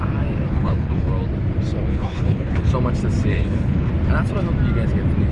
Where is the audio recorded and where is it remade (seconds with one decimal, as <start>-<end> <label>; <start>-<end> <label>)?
0.0-0.5 recorded; 0.5-1.1 remade; 1.1-1.9 recorded; 1.9-2.7 remade; 2.7-3.3 recorded; 3.3-3.9 remade; 3.9-5.3 recorded

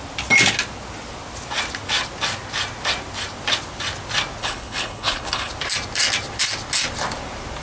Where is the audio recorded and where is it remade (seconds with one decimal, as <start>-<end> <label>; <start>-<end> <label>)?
0.0-4.4 recorded; 4.4-5.5 remade; 5.5-7.6 recorded

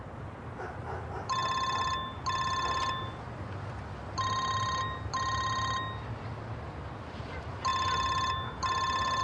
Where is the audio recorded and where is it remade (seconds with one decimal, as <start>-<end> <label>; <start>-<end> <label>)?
0.0-9.2 recorded

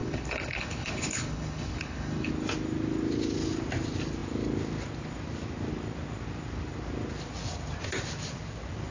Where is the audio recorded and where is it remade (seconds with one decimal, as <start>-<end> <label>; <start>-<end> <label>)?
0.0-2.3 remade; 2.3-8.9 recorded

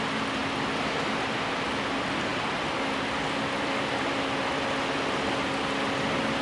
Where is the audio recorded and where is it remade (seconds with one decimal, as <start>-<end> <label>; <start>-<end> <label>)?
0.0-6.4 recorded

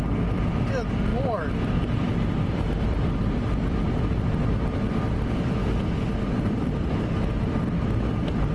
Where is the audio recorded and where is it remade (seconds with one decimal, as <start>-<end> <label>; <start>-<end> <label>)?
0.0-8.5 recorded